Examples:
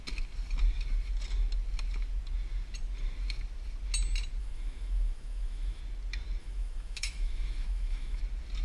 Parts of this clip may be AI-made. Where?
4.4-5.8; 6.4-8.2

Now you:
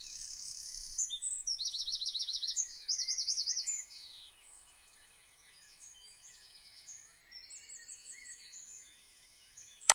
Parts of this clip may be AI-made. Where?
0.0-7.2; 7.9-9.9

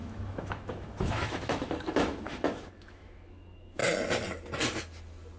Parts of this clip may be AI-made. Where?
0.0-3.8

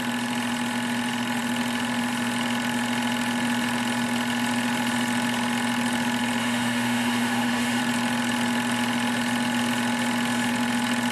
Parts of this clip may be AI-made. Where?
6.4-7.8